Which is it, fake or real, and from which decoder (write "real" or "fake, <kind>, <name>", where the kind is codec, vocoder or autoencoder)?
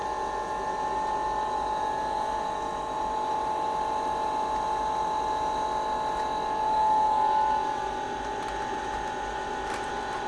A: real